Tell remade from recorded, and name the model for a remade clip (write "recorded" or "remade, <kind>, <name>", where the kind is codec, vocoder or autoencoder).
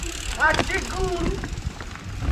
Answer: recorded